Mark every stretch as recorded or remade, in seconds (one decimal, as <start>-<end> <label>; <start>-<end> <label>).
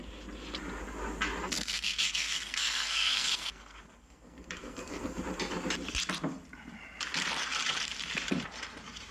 0.0-1.4 recorded; 1.4-5.2 remade; 5.2-9.1 recorded